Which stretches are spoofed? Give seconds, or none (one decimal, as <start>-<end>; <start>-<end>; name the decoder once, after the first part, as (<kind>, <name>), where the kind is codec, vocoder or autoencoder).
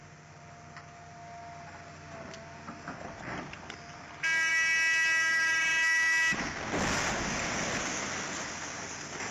none